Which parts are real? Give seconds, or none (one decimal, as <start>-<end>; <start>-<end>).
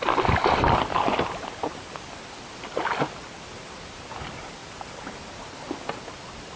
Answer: 0.0-6.6